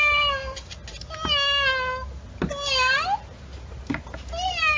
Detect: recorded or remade recorded